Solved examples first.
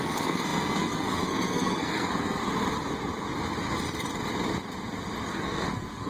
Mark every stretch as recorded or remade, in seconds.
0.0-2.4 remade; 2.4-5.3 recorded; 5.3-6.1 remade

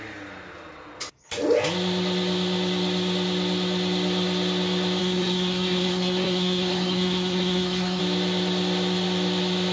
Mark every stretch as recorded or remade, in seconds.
0.0-5.0 recorded; 5.0-8.0 remade; 8.0-9.7 recorded

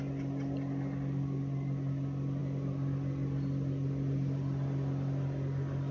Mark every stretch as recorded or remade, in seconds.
0.0-5.9 recorded

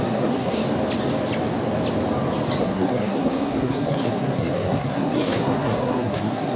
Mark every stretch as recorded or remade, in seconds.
0.0-0.6 remade; 0.6-2.6 recorded; 2.6-6.6 remade

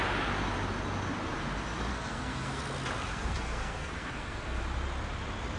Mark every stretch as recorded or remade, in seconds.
0.0-1.9 recorded; 1.9-2.6 remade; 2.6-3.1 recorded; 3.1-4.6 remade; 4.6-5.6 recorded

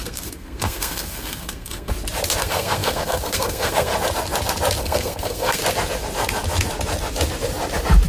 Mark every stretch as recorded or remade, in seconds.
0.0-1.9 remade; 1.9-2.4 recorded; 2.4-3.9 remade; 3.9-4.8 recorded; 4.8-5.6 remade; 5.6-8.1 recorded

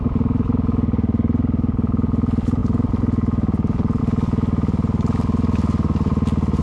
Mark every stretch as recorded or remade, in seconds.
0.0-6.6 recorded

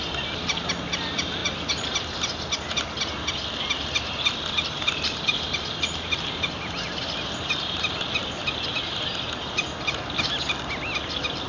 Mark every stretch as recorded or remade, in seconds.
0.0-11.5 recorded